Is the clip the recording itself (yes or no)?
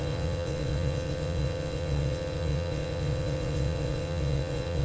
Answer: no